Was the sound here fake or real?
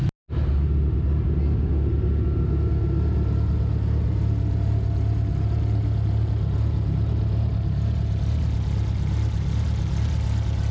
real